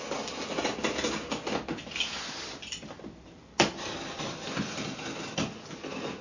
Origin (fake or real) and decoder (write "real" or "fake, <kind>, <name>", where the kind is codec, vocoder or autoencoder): real